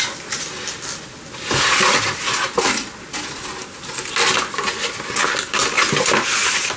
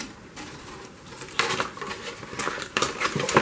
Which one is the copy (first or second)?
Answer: second